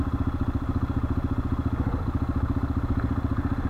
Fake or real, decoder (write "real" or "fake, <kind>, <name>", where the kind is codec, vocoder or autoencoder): real